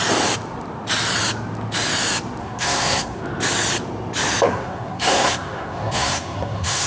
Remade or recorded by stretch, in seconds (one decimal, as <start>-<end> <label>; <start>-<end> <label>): 0.0-2.4 recorded; 2.4-3.2 remade; 3.2-4.5 recorded; 4.5-6.9 remade